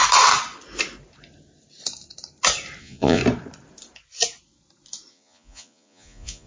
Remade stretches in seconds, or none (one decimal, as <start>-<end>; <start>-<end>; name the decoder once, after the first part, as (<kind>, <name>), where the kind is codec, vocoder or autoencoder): 2.8-3.2 (vocoder, Vocos); 5.1-6.5